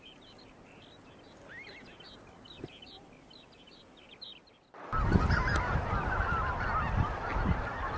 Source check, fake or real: real